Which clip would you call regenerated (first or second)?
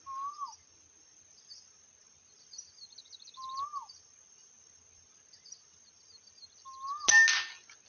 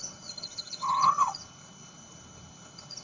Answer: second